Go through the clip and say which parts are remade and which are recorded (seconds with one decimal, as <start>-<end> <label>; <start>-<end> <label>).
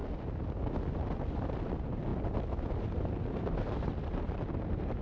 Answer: 0.0-1.3 recorded; 1.3-2.1 remade; 2.1-2.7 recorded; 2.7-5.0 remade